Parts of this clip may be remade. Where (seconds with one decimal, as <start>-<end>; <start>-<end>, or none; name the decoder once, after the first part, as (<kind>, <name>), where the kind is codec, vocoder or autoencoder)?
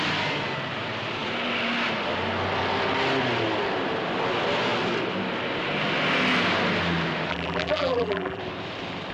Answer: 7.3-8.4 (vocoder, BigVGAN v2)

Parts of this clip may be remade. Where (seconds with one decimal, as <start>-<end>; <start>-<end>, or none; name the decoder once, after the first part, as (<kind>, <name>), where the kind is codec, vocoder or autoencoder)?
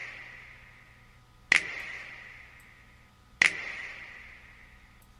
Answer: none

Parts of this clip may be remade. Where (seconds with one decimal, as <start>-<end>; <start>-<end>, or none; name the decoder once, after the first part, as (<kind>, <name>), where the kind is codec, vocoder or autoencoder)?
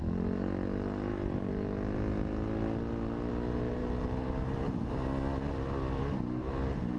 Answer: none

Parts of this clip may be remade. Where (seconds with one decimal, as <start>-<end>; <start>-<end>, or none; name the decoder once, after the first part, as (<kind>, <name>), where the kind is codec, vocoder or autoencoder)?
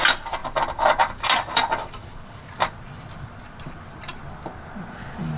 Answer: 0.4-3.6 (vocoder, BigVGAN v2)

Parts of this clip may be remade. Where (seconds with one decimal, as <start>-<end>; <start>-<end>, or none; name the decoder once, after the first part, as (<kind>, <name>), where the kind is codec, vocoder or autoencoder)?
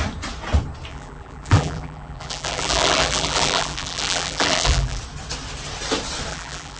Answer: 0.9-5.0 (vocoder, BigVGAN v2); 6.3-6.8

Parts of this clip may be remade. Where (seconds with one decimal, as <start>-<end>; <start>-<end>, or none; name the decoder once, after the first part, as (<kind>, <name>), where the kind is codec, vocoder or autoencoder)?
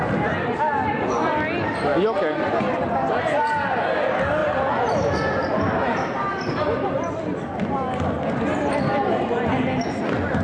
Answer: 1.9-2.6 (vocoder, BigVGAN v2); 4.4-7.9; 8.5-9.2